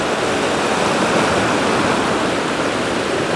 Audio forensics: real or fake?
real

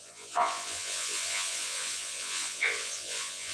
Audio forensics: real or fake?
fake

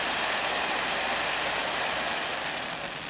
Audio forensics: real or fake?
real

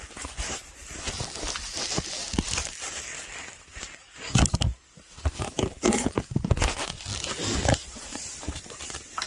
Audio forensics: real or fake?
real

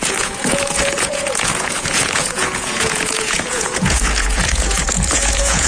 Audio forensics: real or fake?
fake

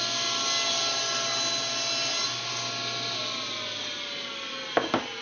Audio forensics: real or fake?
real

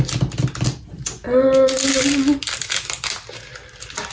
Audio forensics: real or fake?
real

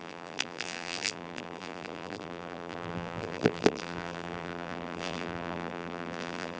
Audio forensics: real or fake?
fake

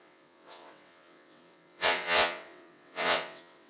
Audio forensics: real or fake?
fake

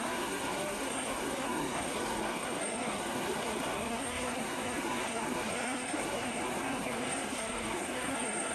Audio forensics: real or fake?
fake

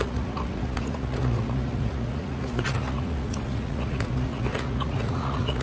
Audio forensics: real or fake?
fake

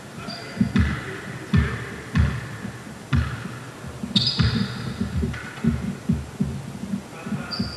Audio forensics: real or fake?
real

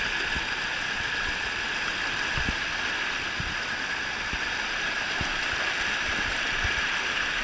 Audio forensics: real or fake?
real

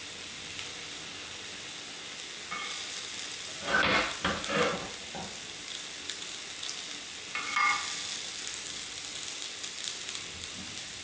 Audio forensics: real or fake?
real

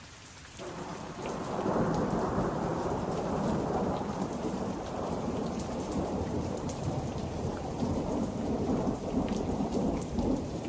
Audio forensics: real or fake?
fake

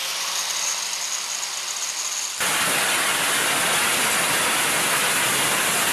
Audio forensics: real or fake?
real